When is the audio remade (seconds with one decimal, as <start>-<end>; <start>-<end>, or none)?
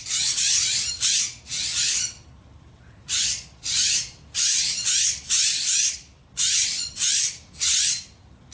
none